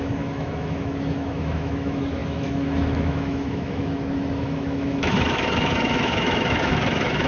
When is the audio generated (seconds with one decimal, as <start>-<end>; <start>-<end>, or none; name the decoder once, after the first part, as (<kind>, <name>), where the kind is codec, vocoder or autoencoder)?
0.0-7.3 (autoencoder, DAC-VAE)